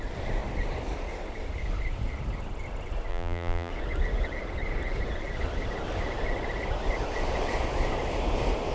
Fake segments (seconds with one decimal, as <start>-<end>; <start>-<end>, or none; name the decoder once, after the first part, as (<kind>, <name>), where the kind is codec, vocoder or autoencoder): 3.1-3.7 (vocoder, BigVGAN v2)